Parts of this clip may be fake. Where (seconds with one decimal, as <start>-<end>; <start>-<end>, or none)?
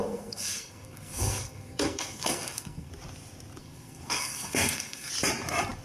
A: 0.0-2.9; 3.6-5.1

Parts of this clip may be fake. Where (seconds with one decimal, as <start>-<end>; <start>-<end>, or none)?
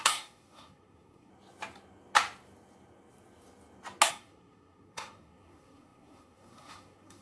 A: 0.0-1.3; 4.1-7.2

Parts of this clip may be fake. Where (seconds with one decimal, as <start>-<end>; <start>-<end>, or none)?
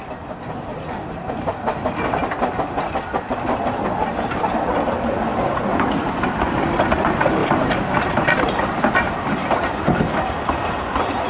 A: 0.7-2.5; 7.4-9.7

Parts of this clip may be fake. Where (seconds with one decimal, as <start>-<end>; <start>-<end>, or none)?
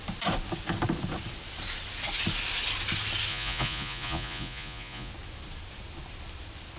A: 3.3-5.1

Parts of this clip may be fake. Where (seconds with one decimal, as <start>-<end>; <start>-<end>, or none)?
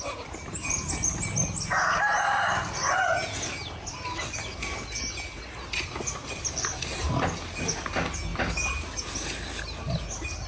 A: none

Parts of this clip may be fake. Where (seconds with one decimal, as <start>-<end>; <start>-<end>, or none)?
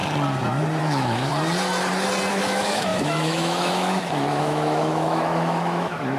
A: 0.8-1.3; 2.3-6.2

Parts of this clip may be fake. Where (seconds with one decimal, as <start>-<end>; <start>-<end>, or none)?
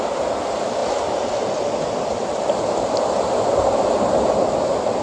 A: none